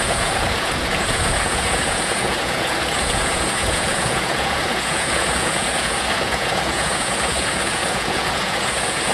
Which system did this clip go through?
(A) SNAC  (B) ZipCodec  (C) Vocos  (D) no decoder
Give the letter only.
C